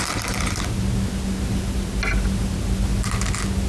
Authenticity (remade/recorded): recorded